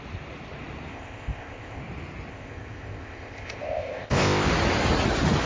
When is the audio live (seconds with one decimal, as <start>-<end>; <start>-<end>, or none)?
0.0-0.9; 1.8-2.3; 4.5-5.5